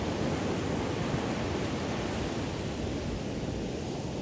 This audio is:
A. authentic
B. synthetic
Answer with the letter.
A